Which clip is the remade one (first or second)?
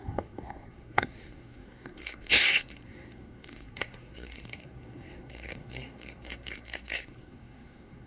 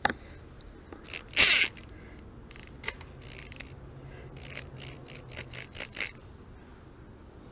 first